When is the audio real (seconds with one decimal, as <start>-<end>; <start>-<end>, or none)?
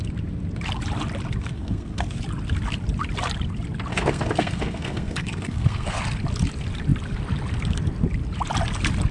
0.0-1.4; 2.2-3.9; 6.0-9.1